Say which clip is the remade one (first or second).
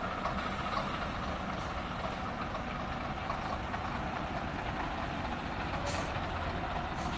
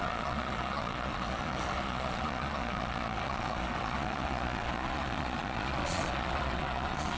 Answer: second